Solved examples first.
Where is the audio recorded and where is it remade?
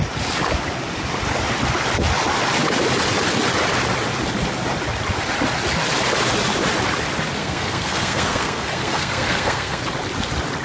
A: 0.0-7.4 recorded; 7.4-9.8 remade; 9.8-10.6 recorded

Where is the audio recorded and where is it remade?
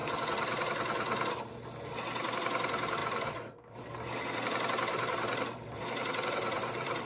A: 0.0-3.0 recorded; 3.0-3.8 remade; 3.8-4.9 recorded; 4.9-7.1 remade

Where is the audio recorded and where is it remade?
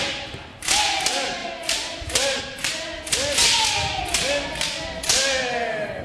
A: 0.0-6.0 recorded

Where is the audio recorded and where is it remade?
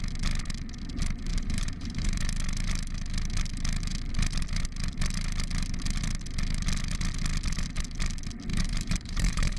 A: 0.0-1.3 recorded; 1.3-2.2 remade; 2.2-8.5 recorded; 8.5-9.6 remade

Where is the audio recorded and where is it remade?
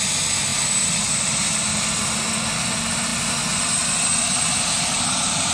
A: 0.0-5.5 recorded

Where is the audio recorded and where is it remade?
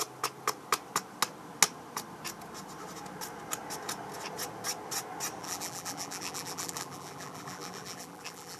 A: 0.0-5.4 recorded; 5.4-8.6 remade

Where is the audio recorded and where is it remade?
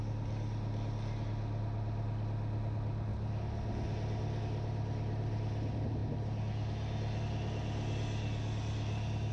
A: 0.0-9.3 recorded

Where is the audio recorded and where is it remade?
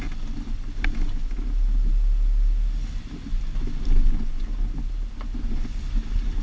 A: 0.0-6.4 recorded